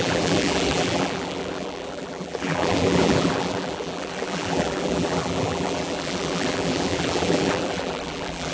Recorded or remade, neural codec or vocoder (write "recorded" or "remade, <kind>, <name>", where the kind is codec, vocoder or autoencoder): remade, vocoder, BigVGAN v2